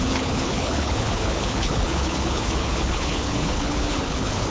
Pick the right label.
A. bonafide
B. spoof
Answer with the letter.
B